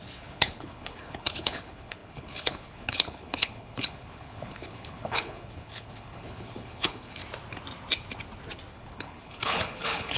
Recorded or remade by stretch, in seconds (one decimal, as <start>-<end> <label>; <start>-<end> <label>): 0.0-7.2 remade; 7.2-8.7 recorded; 8.7-10.2 remade

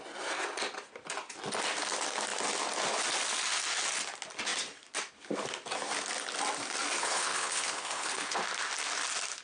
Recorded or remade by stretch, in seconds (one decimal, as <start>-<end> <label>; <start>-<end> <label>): 0.0-7.0 recorded; 7.0-8.4 remade; 8.4-9.4 recorded